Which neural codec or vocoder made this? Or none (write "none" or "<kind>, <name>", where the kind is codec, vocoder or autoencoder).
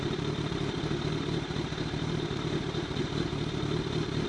vocoder, BigVGAN v2